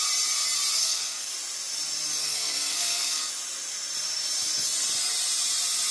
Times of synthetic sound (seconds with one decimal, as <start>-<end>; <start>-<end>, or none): 0.8-1.3; 2.2-3.3